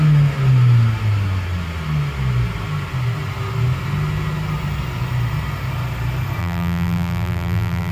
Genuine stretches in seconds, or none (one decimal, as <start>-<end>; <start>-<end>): 0.0-6.4